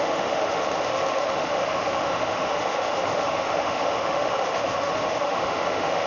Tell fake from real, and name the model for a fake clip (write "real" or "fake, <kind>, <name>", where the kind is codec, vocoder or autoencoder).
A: fake, autoencoder, DAC-VAE